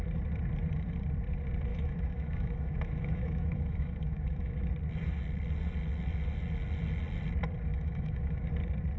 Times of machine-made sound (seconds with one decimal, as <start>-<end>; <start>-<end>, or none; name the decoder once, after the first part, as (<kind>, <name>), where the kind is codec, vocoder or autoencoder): 1.7-4.7 (autoencoder, DAC-VAE); 7.7-8.5